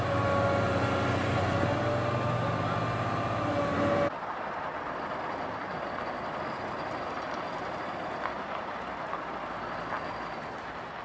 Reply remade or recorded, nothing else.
recorded